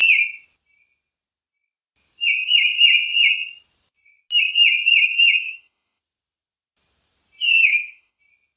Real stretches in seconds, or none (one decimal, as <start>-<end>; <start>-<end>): 0.0-5.4; 6.0-7.6; 8.2-8.6